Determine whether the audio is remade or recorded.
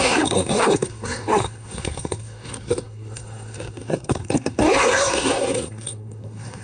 remade